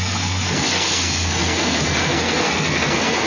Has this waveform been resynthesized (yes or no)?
yes